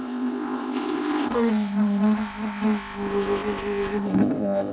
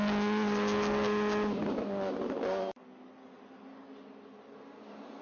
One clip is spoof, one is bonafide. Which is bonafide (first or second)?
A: second